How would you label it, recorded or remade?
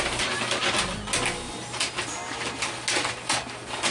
recorded